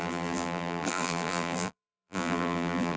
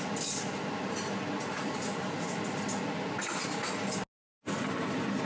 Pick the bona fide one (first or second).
second